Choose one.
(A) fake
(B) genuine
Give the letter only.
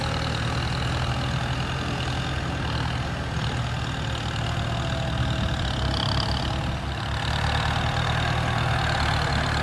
B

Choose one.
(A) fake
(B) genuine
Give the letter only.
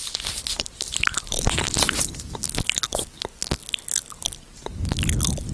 B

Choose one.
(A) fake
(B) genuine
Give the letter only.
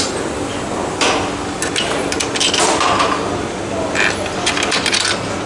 B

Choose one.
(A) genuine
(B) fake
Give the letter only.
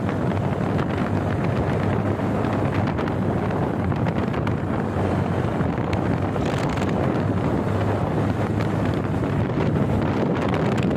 A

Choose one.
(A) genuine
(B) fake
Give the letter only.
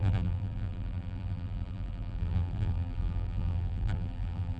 B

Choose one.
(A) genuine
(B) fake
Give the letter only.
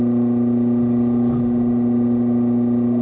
A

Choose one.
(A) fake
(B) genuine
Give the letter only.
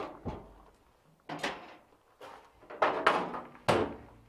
B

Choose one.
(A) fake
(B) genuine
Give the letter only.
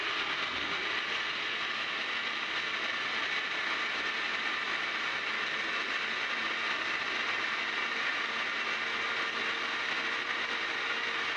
B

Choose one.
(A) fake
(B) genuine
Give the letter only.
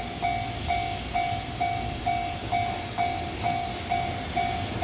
B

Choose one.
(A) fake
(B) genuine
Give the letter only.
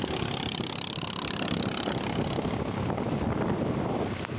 A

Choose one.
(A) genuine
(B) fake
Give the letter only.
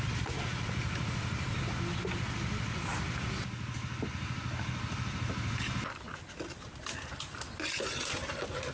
A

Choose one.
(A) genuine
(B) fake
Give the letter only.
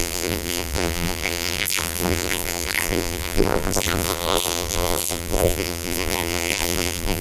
B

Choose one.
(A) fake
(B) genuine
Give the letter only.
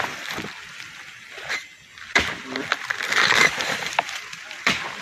B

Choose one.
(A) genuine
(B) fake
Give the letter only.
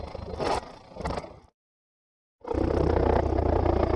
A